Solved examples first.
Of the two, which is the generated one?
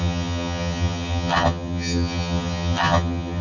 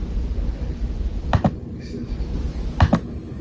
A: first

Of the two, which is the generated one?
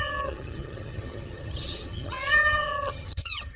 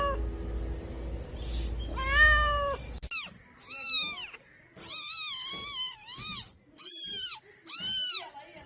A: first